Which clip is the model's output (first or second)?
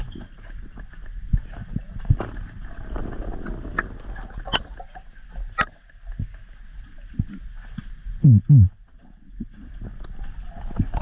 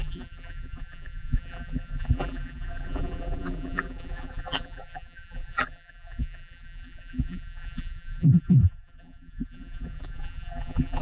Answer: second